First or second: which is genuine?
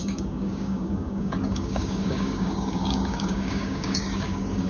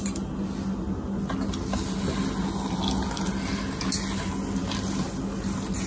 second